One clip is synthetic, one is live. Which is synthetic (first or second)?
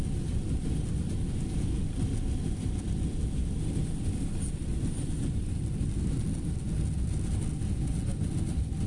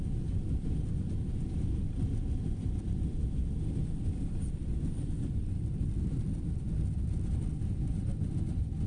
second